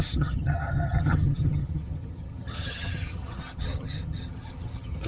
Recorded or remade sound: remade